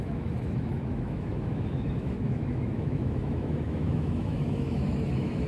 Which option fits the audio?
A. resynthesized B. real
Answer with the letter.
A